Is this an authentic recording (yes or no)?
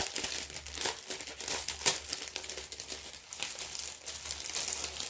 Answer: yes